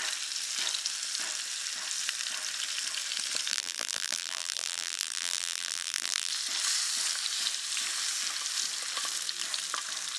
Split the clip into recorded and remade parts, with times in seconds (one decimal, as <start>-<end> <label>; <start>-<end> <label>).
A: 0.0-3.5 recorded; 3.5-6.3 remade; 6.3-10.2 recorded